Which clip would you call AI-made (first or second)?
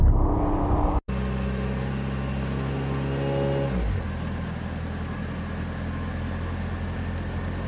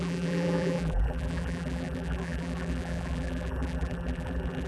second